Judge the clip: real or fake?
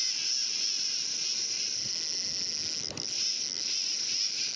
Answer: real